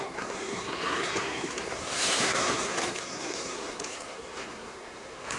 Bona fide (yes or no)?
no